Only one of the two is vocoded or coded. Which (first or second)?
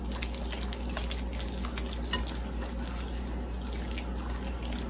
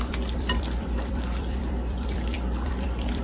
second